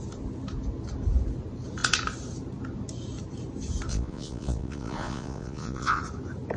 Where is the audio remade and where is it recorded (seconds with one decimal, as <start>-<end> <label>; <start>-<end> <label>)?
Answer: 0.0-3.9 recorded; 3.9-6.0 remade; 6.0-6.6 recorded